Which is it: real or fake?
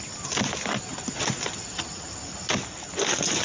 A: real